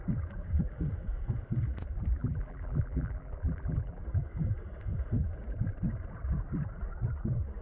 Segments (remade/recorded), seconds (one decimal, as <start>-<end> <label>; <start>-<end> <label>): 0.0-2.2 recorded; 2.2-4.0 remade; 4.0-7.6 recorded